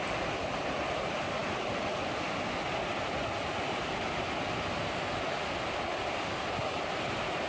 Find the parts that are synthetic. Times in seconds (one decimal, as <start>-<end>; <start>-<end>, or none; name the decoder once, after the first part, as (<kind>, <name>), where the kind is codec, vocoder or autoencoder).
none